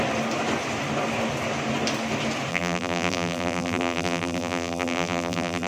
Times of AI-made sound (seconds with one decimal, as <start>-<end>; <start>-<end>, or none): 2.5-5.7